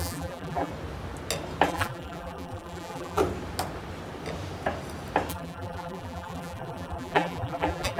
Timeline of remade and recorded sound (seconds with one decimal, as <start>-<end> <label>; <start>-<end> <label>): 0.0-0.7 remade; 0.7-1.7 recorded; 1.7-3.2 remade; 3.2-5.3 recorded; 5.3-8.0 remade